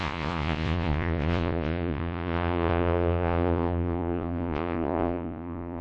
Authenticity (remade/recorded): remade